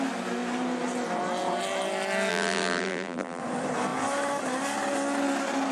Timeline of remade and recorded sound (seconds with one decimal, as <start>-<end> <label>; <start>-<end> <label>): 0.0-2.3 recorded; 2.3-3.4 remade; 3.4-5.7 recorded